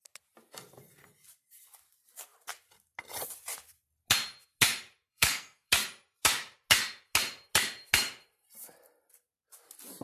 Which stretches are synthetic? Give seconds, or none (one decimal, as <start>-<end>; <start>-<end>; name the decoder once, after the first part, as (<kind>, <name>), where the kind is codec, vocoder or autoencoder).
5.1-5.7 (codec, SNAC)